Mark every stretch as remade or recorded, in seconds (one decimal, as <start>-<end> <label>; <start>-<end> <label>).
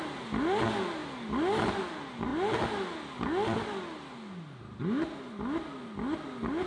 0.0-6.7 recorded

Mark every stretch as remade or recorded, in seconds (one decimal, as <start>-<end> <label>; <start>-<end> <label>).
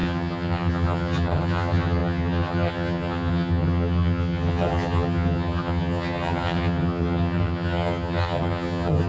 0.0-9.1 remade